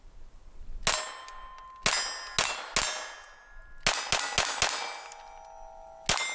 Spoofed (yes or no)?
no